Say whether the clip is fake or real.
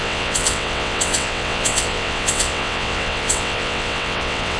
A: fake